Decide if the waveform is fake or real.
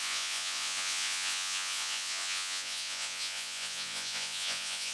fake